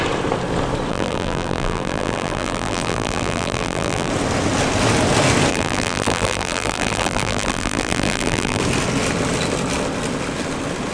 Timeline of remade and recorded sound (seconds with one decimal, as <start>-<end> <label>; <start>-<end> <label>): 0.0-0.9 recorded; 0.9-4.1 remade; 4.1-5.5 recorded; 5.5-8.6 remade; 8.6-10.9 recorded